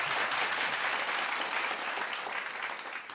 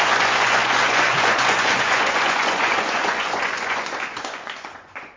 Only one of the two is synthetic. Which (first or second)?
second